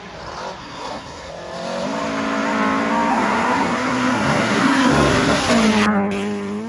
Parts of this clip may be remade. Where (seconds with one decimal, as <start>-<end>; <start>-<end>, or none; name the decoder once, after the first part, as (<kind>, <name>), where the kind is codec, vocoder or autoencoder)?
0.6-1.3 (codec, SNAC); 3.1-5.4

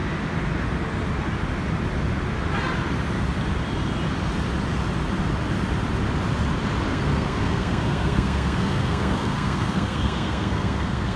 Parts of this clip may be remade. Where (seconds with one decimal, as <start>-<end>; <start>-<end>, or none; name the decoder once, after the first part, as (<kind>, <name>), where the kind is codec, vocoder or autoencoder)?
6.9-11.2 (codec, SNAC)

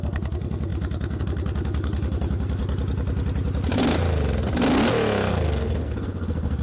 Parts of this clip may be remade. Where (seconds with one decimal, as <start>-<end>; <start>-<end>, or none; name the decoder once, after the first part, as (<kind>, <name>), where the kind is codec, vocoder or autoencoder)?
0.0-2.6 (codec, SNAC); 5.3-6.6